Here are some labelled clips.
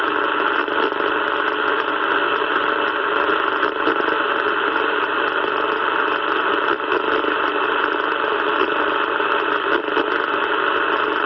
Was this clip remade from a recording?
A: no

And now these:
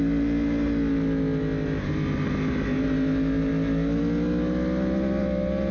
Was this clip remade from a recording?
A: no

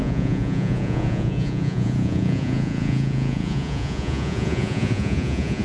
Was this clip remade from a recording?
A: yes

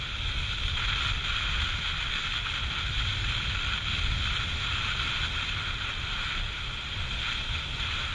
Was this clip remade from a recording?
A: no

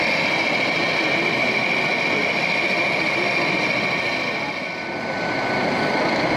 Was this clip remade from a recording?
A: no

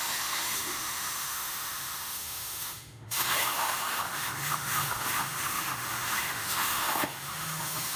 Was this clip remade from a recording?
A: yes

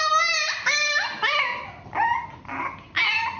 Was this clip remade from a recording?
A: no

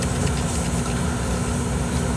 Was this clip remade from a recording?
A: no